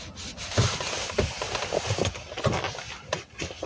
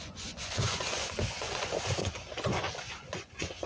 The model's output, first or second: second